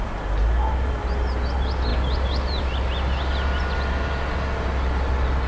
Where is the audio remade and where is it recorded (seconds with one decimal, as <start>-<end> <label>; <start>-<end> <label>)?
0.0-5.5 recorded